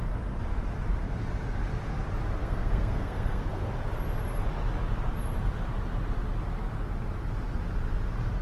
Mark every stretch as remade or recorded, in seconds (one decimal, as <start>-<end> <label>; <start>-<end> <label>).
0.0-2.4 recorded; 2.4-3.7 remade; 3.7-8.4 recorded